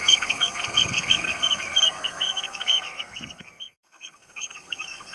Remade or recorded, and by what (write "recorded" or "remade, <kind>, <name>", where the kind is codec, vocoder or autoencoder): remade, codec, SNAC